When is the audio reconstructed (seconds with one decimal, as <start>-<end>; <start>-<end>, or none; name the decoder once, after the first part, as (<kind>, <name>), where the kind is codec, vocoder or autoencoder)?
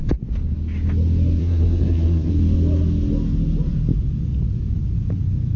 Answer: 1.4-2.3 (codec, SNAC)